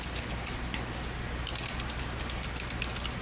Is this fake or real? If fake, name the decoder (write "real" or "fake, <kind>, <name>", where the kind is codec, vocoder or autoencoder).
real